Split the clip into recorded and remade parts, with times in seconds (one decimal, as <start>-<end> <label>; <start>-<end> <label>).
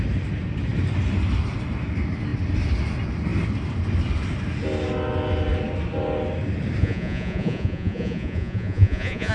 0.0-6.8 recorded; 6.8-9.3 remade